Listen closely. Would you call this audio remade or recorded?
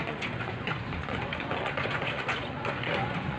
remade